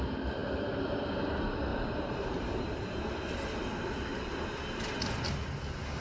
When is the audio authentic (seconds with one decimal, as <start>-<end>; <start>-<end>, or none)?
0.0-1.7; 3.0-6.0